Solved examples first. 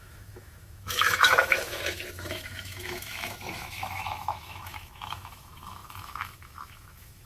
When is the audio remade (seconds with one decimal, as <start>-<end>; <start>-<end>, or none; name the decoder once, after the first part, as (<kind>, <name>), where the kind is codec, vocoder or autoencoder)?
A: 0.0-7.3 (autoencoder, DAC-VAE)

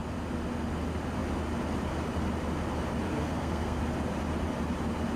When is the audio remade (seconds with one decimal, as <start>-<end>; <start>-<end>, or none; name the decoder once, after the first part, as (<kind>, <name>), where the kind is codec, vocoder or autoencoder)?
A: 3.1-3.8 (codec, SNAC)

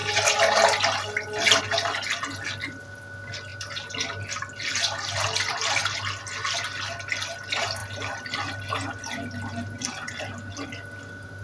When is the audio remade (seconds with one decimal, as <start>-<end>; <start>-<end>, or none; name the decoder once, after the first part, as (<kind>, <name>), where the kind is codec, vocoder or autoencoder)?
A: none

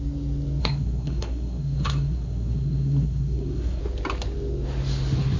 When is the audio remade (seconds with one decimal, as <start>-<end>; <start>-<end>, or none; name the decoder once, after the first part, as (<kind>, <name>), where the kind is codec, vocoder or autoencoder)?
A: 0.6-3.8 (codec, SNAC)

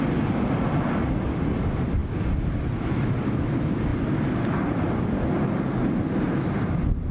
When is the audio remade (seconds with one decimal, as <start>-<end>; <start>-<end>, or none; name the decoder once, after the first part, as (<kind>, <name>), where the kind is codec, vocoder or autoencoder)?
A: none